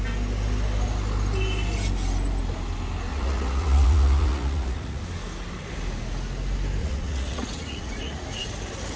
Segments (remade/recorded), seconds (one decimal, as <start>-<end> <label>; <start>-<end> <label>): 0.0-3.1 recorded; 3.1-5.0 remade; 5.0-6.8 recorded; 6.8-8.5 remade; 8.5-9.0 recorded